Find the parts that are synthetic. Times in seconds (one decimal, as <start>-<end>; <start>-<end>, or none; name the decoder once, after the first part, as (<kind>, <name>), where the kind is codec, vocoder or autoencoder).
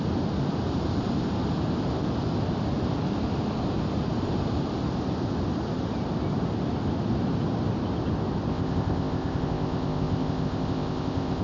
8.5-11.4 (codec, ZipCodec)